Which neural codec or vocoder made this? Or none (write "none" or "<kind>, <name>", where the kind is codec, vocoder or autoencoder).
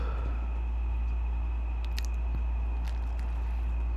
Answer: none